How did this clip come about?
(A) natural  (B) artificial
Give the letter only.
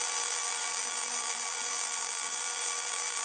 B